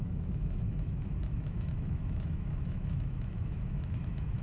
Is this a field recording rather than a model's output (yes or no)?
no